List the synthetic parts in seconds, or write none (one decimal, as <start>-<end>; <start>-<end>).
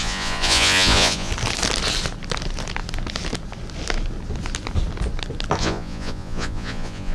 0.0-1.3; 5.6-7.1